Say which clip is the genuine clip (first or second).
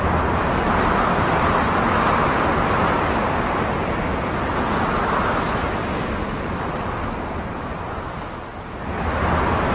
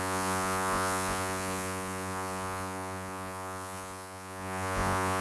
first